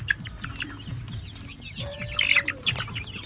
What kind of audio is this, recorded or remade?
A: recorded